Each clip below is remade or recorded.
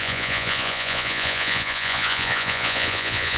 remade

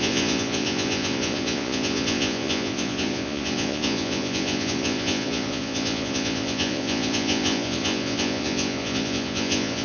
remade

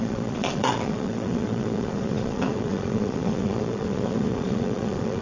remade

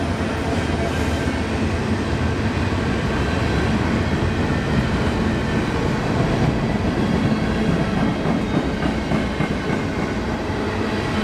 recorded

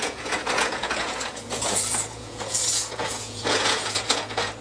remade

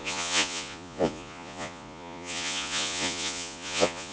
remade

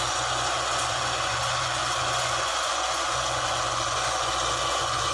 remade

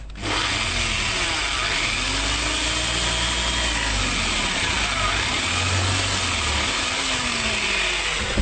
recorded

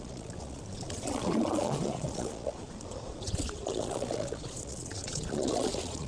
remade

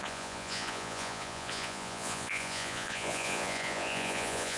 remade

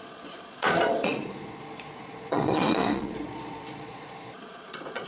remade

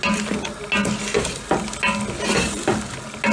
recorded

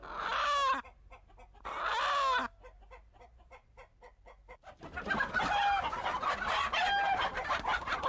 recorded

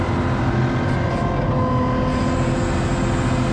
recorded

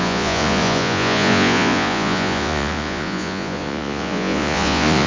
remade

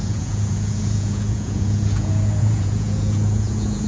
remade